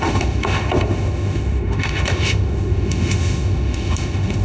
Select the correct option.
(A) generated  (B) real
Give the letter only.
A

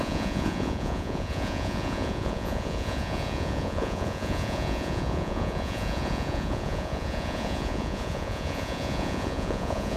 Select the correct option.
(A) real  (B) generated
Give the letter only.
B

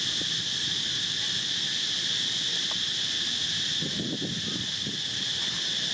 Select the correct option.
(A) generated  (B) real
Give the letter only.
B